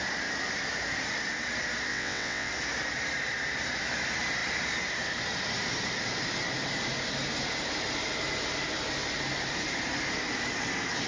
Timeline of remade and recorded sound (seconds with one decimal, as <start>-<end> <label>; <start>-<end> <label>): 0.0-1.9 recorded; 1.9-2.5 remade; 2.5-11.1 recorded